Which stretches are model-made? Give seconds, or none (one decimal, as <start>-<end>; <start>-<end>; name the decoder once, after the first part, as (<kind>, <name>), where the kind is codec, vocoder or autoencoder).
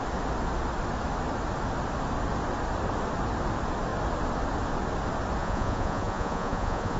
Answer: 5.4-7.0 (vocoder, Vocos)